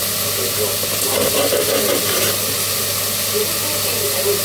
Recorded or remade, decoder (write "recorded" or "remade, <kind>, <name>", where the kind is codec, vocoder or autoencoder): recorded